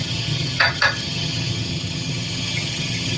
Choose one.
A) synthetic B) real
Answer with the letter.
A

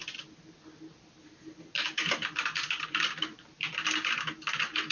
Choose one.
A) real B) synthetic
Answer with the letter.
A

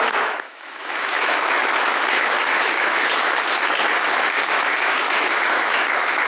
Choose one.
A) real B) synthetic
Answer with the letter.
B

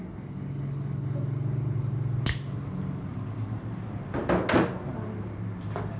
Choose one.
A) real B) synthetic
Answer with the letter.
A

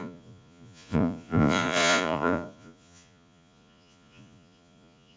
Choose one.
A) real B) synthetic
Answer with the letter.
B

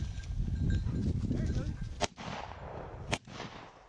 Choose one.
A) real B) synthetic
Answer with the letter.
A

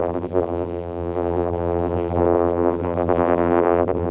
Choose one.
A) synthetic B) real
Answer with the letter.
A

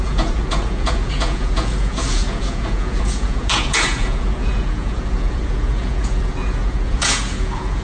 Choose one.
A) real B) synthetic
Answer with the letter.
B